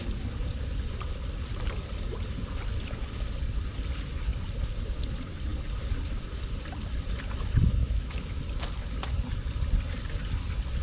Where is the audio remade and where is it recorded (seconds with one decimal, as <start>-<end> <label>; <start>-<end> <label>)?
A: 0.0-7.8 recorded; 7.8-8.4 remade; 8.4-10.8 recorded